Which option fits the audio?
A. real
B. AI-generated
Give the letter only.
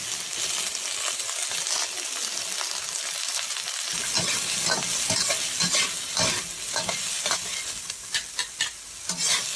A